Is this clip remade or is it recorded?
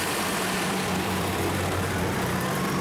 remade